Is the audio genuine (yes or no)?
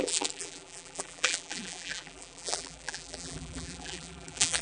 no